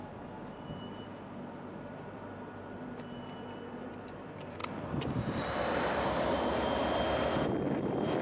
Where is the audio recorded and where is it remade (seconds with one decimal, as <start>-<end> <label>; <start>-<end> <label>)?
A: 0.0-8.2 remade

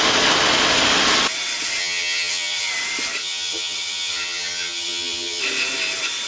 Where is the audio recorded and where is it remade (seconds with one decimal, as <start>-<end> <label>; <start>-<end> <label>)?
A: 0.0-1.8 recorded; 1.8-2.7 remade; 2.7-3.2 recorded; 3.2-5.4 remade; 5.4-6.3 recorded

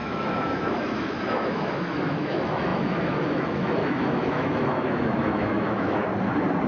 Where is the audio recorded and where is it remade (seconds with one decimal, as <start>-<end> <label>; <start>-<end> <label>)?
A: 0.0-6.1 remade; 6.1-6.7 recorded

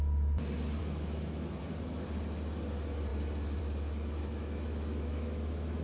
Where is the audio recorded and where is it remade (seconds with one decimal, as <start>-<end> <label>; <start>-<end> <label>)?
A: 0.0-0.8 recorded; 0.8-1.6 remade; 1.6-4.2 recorded; 4.2-5.8 remade